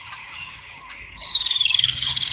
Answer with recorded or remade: remade